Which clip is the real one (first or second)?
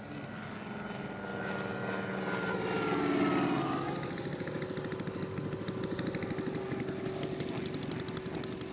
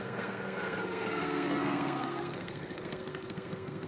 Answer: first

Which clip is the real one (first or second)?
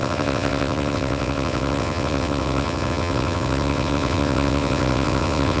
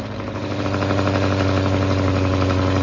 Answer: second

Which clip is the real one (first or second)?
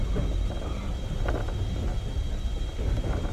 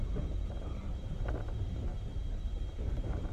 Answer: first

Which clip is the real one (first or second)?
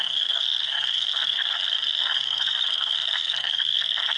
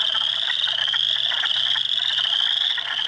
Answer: second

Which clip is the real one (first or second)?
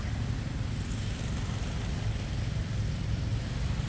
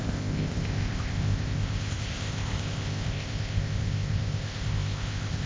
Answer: first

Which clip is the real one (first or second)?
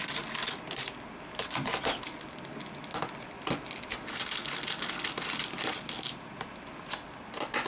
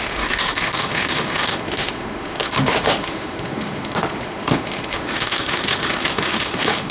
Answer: first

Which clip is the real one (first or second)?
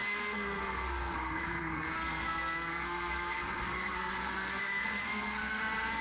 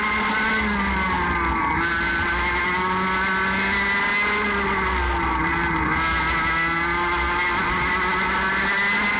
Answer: second